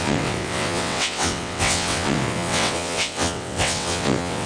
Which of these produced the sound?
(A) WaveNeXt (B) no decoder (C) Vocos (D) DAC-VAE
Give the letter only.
A